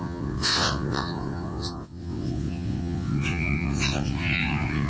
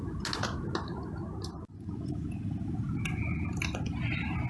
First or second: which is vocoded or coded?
first